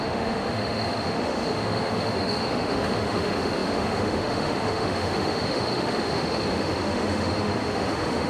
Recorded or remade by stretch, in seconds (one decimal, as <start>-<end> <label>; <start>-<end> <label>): 0.0-8.3 remade